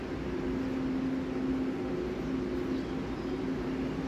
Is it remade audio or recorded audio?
recorded